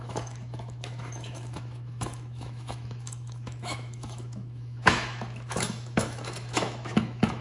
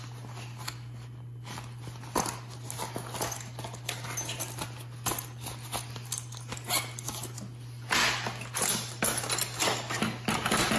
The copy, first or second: first